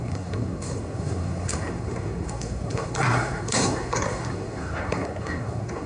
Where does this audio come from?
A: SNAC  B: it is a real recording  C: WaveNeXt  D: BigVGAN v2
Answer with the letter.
A